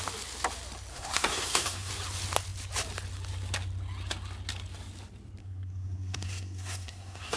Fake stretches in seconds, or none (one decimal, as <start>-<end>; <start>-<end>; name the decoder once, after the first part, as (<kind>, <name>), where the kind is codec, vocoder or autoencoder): 0.9-1.9 (codec, SNAC); 5.4-7.4